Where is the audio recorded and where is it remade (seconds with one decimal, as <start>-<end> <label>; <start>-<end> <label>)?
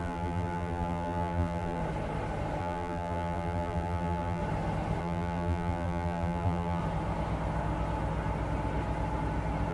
0.0-1.8 remade; 1.8-2.6 recorded; 2.6-4.4 remade; 4.4-5.0 recorded; 5.0-6.8 remade; 6.8-9.7 recorded